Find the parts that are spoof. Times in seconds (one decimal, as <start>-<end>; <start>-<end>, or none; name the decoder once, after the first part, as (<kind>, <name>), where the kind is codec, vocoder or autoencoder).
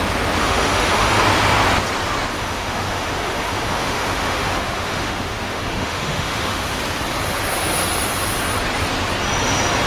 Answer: 0.4-1.2 (autoencoder, DAC-VAE); 2.3-6.8